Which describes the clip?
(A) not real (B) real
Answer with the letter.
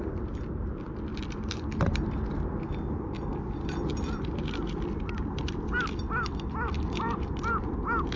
B